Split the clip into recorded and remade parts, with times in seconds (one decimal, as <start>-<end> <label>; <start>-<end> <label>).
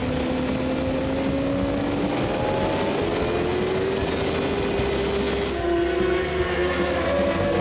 0.0-7.6 recorded